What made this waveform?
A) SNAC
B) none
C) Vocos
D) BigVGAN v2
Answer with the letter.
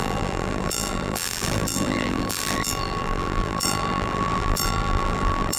D